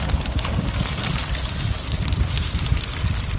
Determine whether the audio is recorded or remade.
remade